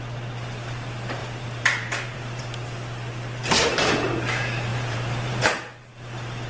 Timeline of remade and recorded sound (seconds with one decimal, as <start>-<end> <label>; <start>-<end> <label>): 0.0-1.2 recorded; 1.2-2.4 remade; 2.4-4.7 recorded; 4.7-5.4 remade; 5.4-6.5 recorded